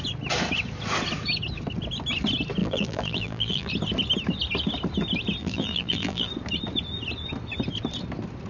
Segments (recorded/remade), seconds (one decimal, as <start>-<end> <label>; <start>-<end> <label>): 0.0-2.6 recorded; 2.6-3.7 remade; 3.7-5.4 recorded; 5.4-6.3 remade; 6.3-8.5 recorded